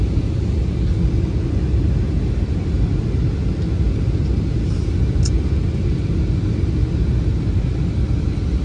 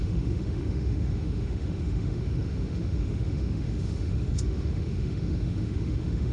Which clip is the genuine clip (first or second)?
first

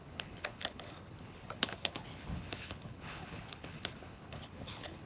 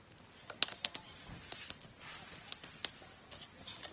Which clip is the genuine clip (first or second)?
second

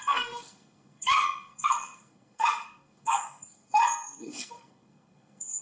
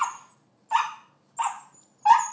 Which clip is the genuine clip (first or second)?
second